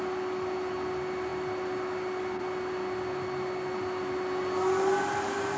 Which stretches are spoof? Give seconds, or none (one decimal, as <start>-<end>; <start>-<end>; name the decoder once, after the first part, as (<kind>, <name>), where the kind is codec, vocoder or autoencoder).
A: none